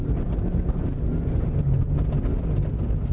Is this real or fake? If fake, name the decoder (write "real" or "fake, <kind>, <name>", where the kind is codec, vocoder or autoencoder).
real